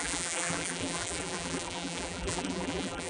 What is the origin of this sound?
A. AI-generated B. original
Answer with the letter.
A